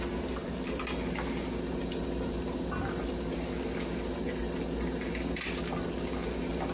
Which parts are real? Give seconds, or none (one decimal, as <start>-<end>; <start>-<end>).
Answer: 0.0-6.7